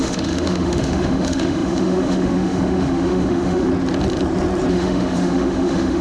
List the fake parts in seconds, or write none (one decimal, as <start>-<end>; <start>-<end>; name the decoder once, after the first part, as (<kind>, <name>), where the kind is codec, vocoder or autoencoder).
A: 0.0-3.7 (autoencoder, DAC-VAE); 4.7-6.0